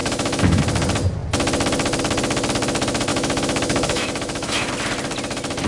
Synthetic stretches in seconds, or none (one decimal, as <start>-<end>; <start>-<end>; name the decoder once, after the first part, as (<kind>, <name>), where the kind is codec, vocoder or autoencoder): 0.0-0.6 (autoencoder, DAC-VAE); 3.1-4.7